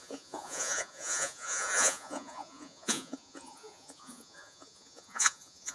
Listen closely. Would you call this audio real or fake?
fake